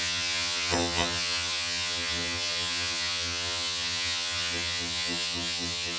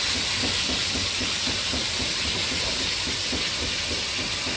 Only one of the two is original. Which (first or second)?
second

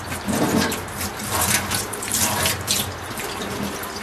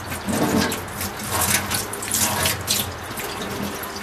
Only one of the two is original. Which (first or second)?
second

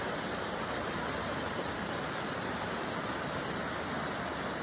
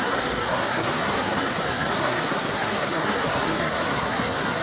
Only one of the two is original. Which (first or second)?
first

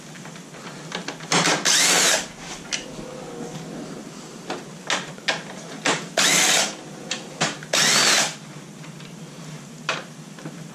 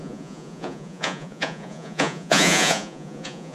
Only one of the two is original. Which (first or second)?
first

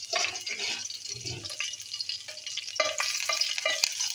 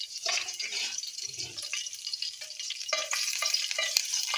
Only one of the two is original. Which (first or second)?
first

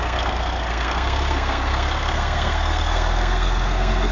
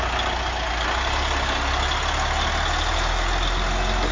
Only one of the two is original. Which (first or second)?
second